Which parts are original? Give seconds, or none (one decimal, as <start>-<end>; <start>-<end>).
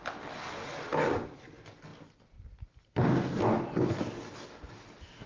0.0-5.3